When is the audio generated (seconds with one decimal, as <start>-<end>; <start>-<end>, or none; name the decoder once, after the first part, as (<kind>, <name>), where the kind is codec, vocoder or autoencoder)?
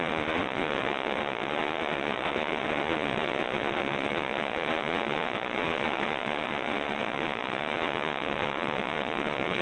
0.0-9.6 (vocoder, Vocos)